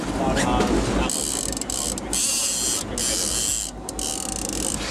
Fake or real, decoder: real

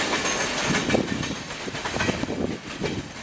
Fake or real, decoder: real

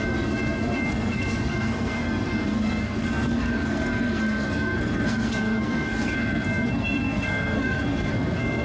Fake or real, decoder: fake, codec, SNAC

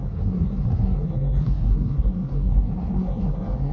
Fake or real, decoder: fake, codec, SNAC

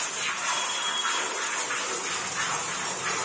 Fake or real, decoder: real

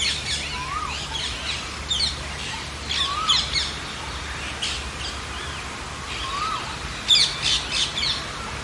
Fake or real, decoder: real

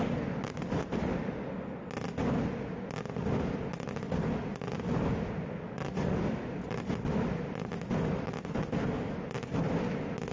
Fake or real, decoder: real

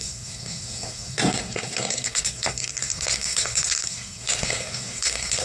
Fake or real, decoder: fake, codec, SNAC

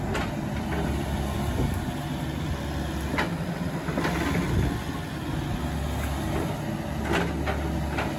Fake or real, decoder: real